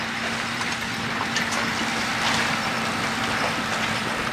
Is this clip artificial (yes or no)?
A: no